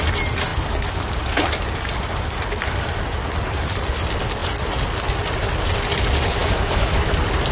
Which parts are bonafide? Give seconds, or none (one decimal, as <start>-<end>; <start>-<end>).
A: 0.0-6.4; 7.1-7.5